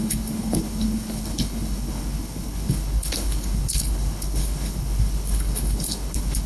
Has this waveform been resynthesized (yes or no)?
yes